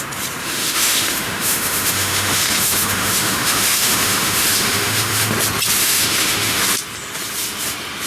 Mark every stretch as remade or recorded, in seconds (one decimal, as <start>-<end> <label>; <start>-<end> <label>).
0.0-0.4 recorded; 0.4-5.3 remade; 5.3-5.8 recorded; 5.8-6.6 remade; 6.6-8.1 recorded